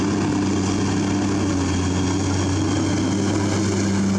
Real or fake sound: real